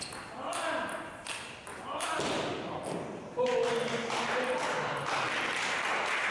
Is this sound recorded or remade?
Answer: recorded